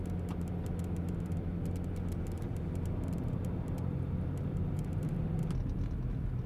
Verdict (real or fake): real